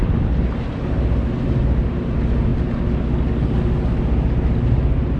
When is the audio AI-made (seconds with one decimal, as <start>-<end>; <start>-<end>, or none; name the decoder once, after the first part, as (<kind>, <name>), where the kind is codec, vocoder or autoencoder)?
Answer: none